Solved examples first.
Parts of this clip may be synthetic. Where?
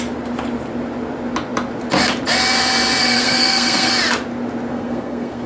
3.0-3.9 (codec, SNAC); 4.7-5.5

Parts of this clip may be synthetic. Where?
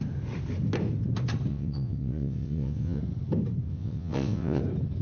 1.5-3.0 (vocoder, WaveNeXt); 3.7-4.6